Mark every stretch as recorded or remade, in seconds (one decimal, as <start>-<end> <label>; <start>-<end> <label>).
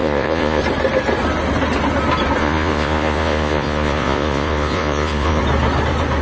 0.0-0.6 remade; 0.6-2.4 recorded; 2.4-5.4 remade; 5.4-6.2 recorded